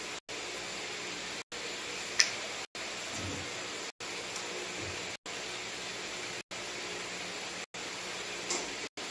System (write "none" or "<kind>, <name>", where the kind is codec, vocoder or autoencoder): none